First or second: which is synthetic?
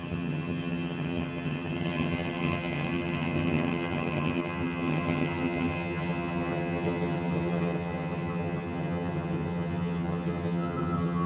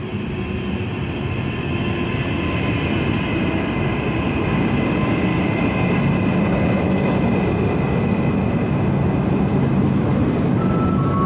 first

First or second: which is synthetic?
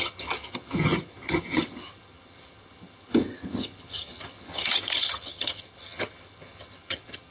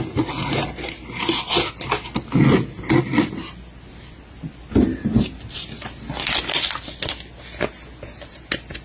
first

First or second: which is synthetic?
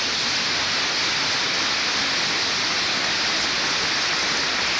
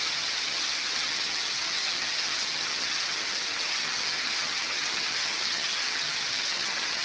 second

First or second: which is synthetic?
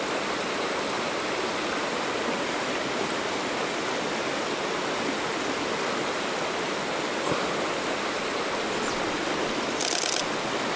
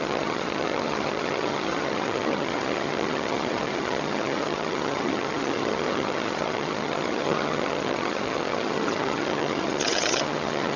second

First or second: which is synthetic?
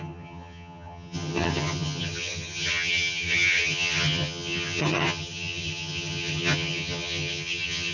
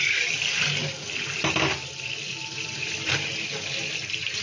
first